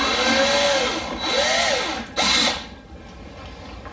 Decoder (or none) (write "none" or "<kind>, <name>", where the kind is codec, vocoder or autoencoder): none